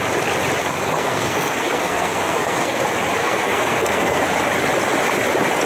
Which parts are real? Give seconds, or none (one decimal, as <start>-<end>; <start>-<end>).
0.0-0.6; 2.8-3.2; 4.2-5.7